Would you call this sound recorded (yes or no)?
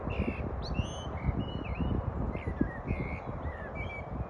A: yes